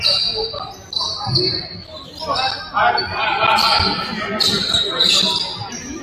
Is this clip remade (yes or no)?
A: no